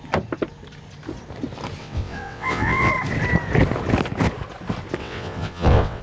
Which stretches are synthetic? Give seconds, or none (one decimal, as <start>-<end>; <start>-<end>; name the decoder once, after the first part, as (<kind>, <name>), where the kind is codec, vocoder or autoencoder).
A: 1.8-2.9 (vocoder, WaveNeXt); 5.0-6.0